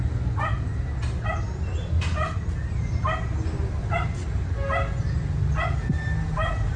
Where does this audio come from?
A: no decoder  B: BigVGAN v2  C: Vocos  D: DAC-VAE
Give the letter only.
A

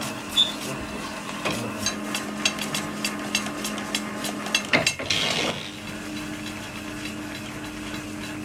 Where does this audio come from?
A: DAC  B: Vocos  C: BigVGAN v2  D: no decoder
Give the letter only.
D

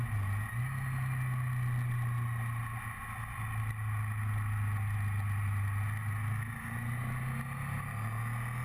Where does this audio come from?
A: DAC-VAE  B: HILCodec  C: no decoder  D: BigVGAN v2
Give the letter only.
C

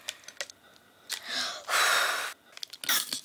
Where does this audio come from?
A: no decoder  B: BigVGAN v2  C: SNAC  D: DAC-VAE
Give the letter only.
A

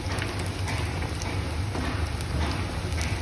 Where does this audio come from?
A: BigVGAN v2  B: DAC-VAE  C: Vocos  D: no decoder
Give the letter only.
D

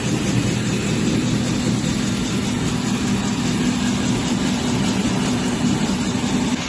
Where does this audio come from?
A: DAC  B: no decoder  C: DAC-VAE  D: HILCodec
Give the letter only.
B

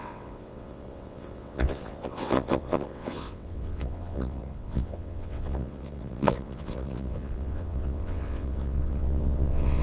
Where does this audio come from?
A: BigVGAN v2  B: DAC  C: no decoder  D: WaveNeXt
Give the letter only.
D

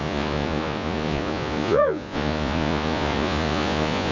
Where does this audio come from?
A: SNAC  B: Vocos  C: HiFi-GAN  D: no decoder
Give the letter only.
B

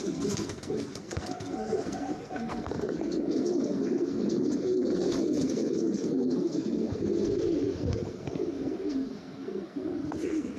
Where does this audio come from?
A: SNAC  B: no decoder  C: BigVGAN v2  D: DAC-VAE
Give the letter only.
A